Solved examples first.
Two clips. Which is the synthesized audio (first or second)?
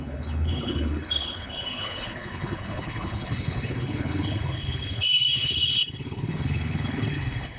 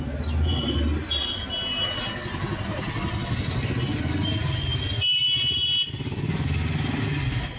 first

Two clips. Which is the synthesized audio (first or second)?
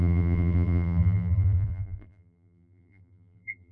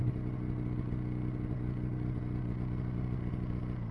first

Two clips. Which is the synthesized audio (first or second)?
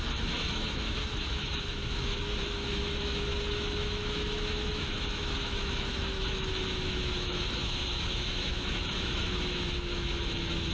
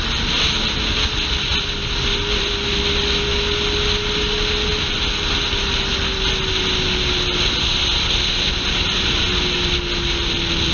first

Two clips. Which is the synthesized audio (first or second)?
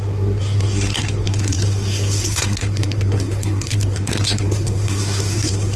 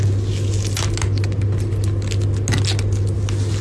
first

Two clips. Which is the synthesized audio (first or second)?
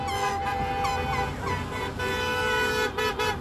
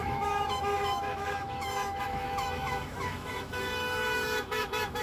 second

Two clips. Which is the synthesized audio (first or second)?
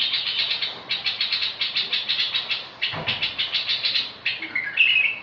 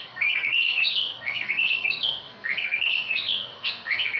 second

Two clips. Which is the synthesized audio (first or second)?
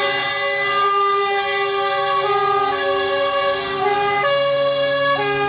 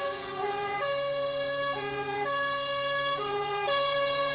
second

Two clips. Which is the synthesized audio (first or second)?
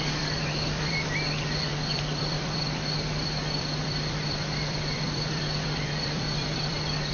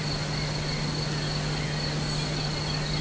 first